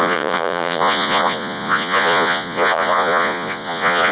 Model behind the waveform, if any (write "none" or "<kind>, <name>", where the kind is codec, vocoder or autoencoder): vocoder, Vocos